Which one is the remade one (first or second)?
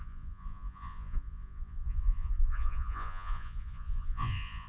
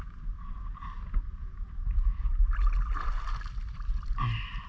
first